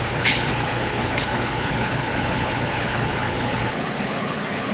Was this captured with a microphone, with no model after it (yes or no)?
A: no